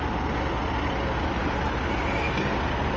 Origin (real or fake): real